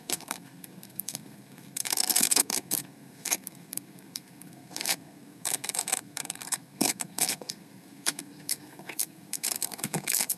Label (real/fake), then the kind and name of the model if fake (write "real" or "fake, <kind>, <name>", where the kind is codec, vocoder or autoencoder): fake, codec, SNAC